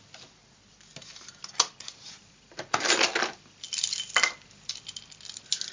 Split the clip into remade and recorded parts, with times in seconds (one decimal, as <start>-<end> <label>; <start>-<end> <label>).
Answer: 0.0-5.7 recorded